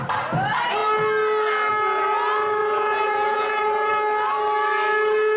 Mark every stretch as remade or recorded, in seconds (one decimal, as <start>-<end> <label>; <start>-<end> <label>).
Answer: 0.0-2.6 recorded; 2.6-3.9 remade; 3.9-5.4 recorded